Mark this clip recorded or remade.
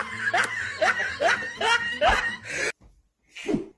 recorded